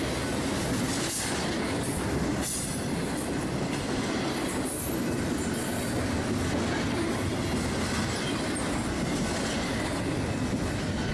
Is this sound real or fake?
real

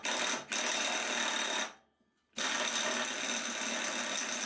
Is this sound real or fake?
real